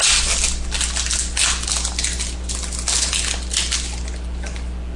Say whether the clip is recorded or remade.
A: recorded